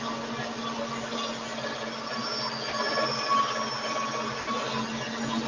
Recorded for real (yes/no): yes